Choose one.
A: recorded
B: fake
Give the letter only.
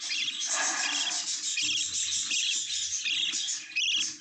A